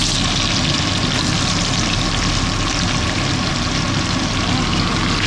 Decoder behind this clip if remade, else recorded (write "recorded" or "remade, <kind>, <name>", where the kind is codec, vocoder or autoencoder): recorded